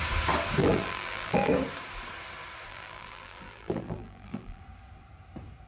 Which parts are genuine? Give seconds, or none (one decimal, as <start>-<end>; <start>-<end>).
0.0-0.6; 1.5-2.7; 4.6-5.7